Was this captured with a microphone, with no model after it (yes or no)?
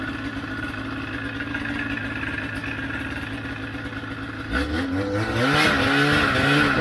yes